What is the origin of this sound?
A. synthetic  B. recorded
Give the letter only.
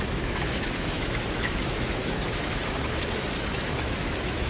A